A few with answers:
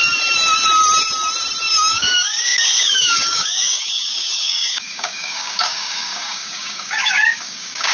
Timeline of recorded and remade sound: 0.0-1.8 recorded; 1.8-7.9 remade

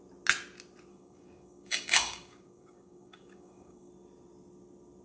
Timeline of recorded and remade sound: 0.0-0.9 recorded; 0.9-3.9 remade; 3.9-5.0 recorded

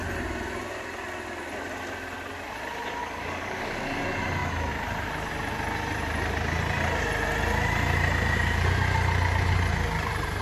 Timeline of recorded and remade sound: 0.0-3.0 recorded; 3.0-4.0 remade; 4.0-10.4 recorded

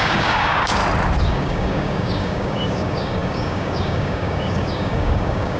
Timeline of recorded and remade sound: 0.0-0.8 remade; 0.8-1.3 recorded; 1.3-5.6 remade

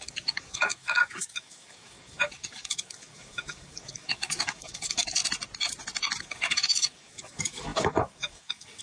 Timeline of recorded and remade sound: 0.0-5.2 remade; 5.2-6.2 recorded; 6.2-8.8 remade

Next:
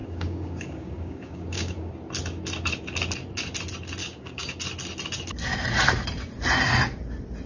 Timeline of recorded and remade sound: 0.0-1.9 remade; 1.9-4.0 recorded; 4.0-4.6 remade; 4.6-7.5 recorded

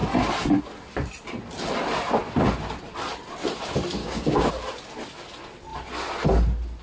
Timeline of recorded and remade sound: 0.0-4.0 recorded; 4.0-4.5 remade; 4.5-6.8 recorded